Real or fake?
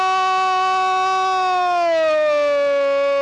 real